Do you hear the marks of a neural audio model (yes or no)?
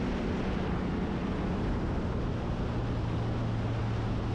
no